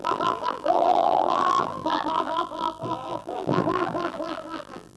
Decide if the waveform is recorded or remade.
remade